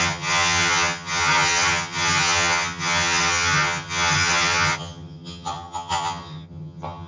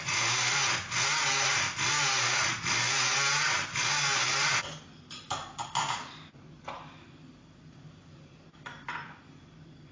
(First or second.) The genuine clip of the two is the second